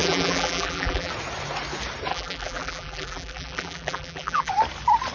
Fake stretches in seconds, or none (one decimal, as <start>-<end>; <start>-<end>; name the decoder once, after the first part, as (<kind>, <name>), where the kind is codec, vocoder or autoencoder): 0.0-1.1 (vocoder, BigVGAN v2); 2.1-4.5